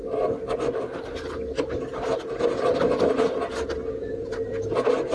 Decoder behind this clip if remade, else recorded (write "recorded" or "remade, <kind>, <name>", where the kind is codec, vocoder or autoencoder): recorded